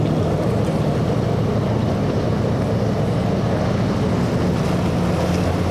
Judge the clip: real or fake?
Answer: real